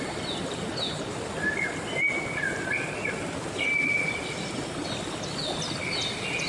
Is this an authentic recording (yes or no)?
yes